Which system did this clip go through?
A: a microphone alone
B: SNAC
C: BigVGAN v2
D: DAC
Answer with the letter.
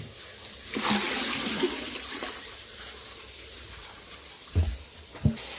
A